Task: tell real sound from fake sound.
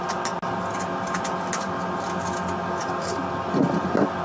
real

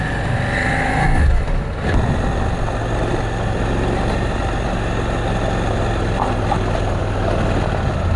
real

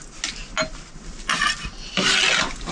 real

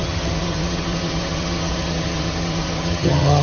fake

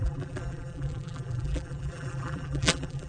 fake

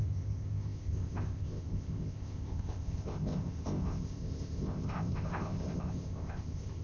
fake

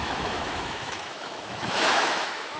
fake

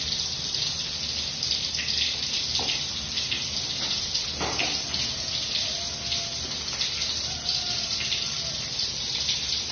real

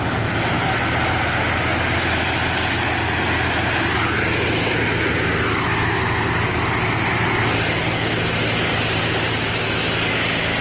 real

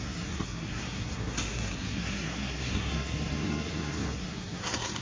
fake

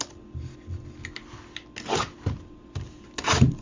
real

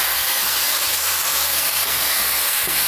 fake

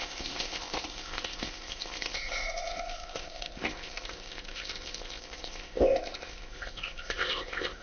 fake